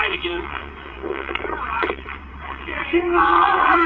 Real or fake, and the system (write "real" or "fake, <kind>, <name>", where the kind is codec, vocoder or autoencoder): fake, vocoder, WaveNeXt